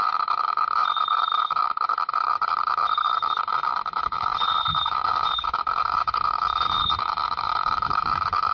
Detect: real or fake fake